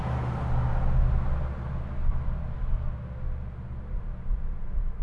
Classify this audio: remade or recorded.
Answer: recorded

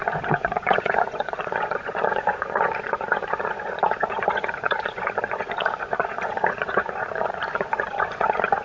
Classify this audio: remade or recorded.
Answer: remade